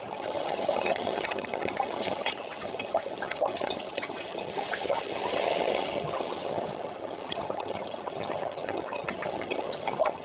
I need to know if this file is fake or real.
fake